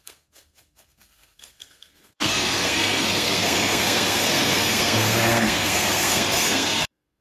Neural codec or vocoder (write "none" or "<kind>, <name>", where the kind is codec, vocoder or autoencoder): codec, SNAC